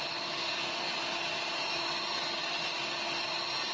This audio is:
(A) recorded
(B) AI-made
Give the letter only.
A